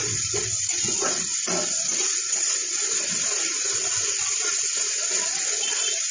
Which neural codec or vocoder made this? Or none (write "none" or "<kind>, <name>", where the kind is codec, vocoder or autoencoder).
none